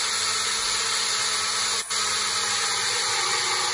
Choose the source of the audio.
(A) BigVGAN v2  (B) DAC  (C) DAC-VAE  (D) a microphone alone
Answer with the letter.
D